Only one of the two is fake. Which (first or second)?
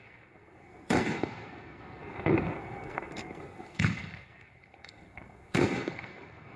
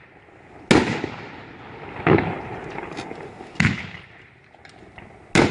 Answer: first